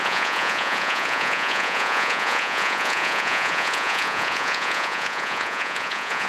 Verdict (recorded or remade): remade